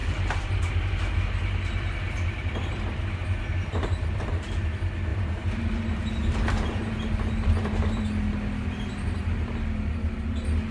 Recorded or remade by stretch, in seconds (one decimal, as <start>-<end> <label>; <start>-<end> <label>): 0.0-0.7 remade; 0.7-3.2 recorded; 3.2-4.3 remade; 4.3-5.1 recorded; 5.1-8.0 remade; 8.0-10.7 recorded